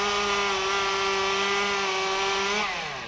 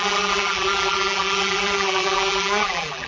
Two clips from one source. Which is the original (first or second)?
first